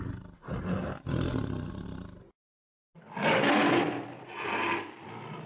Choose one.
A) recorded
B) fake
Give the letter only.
A